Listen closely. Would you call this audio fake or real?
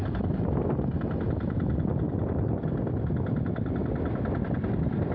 real